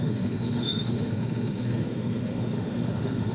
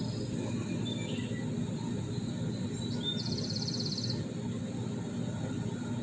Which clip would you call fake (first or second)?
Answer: first